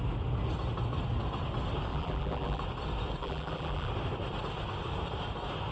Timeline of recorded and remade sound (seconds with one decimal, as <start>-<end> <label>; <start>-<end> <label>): 0.0-1.9 recorded; 1.9-2.6 remade; 2.6-3.2 recorded; 3.2-3.9 remade; 3.9-5.7 recorded